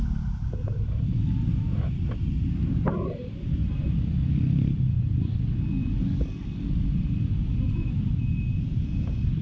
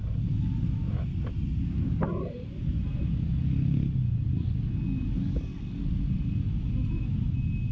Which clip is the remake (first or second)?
first